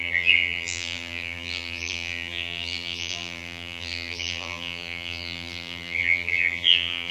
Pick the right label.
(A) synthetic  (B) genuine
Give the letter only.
A